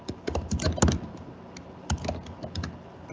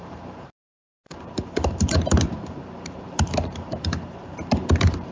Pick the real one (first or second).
first